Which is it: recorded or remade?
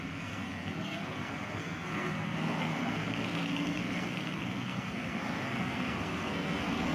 remade